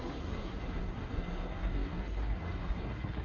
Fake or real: fake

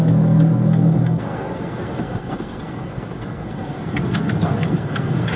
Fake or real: fake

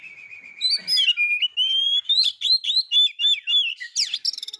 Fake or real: real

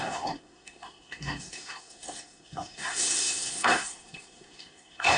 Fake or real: fake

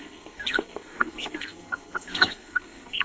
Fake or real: fake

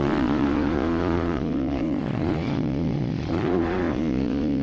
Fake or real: fake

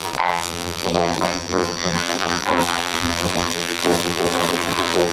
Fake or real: fake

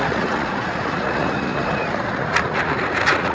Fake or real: fake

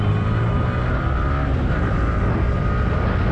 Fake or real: real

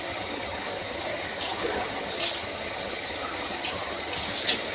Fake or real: fake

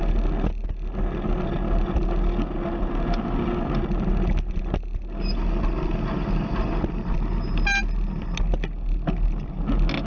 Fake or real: real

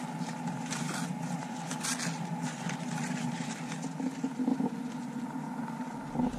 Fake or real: real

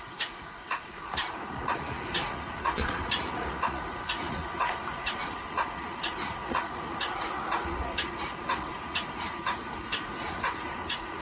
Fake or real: fake